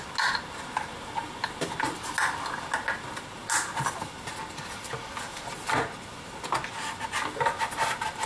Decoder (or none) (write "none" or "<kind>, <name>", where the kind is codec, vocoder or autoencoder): none